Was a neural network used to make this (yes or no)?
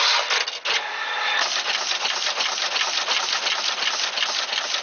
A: no